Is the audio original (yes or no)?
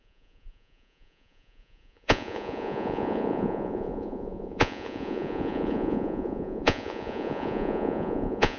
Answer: no